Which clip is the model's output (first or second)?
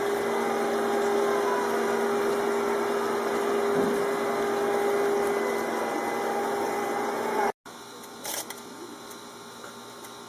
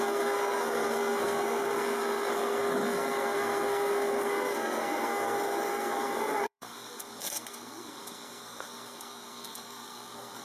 second